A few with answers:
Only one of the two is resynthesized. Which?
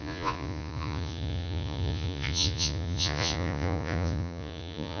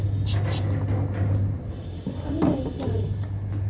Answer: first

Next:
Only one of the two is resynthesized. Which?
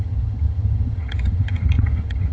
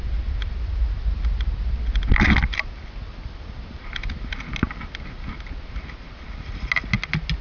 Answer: first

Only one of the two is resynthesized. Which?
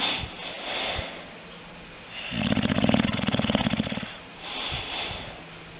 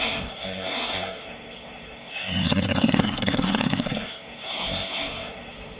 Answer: second